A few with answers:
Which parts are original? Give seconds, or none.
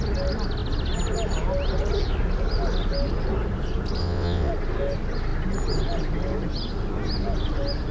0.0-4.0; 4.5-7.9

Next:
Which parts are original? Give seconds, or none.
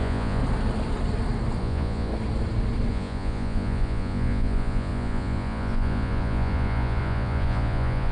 0.4-1.6; 2.1-2.9